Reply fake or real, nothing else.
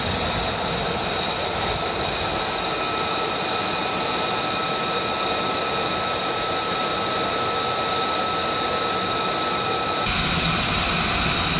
real